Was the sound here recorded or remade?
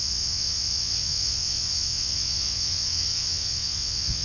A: remade